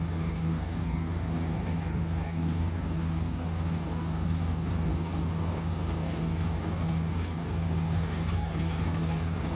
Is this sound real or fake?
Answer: fake